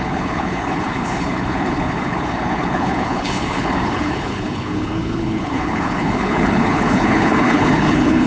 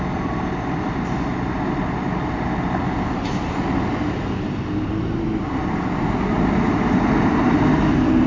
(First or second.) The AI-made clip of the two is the first